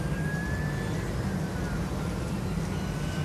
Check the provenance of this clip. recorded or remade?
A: recorded